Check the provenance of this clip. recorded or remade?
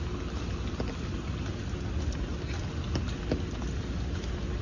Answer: recorded